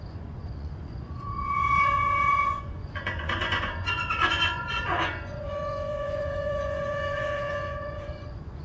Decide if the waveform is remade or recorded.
remade